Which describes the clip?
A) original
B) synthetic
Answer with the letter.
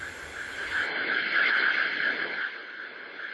A